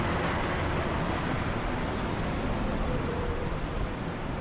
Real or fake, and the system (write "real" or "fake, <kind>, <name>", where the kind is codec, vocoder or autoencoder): real